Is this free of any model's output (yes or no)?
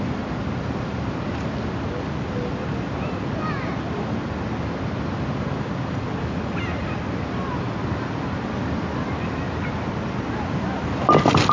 yes